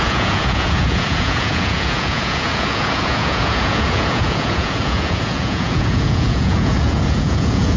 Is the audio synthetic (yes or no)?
yes